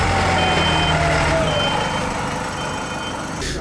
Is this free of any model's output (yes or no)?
yes